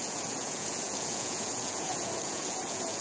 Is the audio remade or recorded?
remade